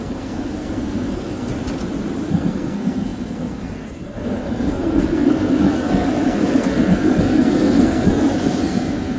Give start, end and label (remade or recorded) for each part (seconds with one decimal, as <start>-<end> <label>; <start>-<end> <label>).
0.0-1.5 remade; 1.5-2.3 recorded; 2.3-9.2 remade

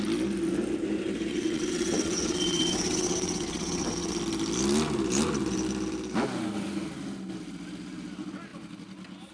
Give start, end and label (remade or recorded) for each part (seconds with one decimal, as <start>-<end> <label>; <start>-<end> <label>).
0.0-1.3 recorded; 1.3-4.2 remade; 4.2-9.3 recorded

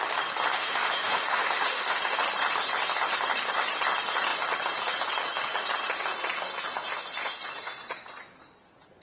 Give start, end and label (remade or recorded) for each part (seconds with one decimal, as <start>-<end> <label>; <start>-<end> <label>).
0.0-0.5 recorded; 0.5-2.2 remade; 2.2-9.0 recorded

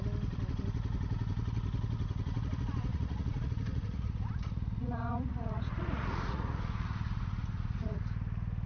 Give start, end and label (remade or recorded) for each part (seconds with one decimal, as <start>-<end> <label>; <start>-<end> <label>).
0.0-2.9 recorded; 2.9-8.0 remade; 8.0-8.7 recorded

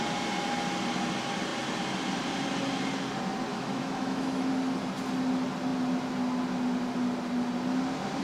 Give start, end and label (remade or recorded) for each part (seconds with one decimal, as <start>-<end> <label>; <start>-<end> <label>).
0.0-3.5 recorded; 3.5-4.5 remade; 4.5-8.2 recorded

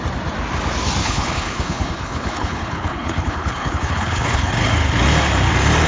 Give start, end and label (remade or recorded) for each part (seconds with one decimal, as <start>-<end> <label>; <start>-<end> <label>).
0.0-1.0 recorded; 1.0-4.5 remade; 4.5-5.9 recorded

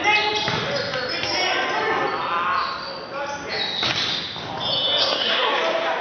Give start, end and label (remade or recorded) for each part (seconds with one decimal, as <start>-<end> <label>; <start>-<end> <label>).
0.0-5.0 recorded; 5.0-5.5 remade; 5.5-6.0 recorded

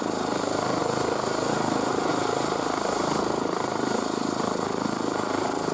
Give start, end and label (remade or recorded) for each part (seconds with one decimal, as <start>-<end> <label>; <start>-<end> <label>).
0.0-2.1 recorded; 2.1-2.6 remade; 2.6-5.7 recorded